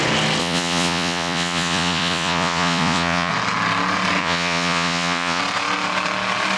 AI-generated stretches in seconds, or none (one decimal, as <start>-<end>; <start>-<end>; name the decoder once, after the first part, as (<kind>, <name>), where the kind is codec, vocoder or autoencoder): 0.4-3.3 (vocoder, Vocos); 4.2-5.4